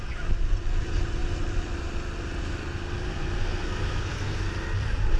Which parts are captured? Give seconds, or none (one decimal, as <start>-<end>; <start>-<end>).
0.0-3.4; 4.5-5.2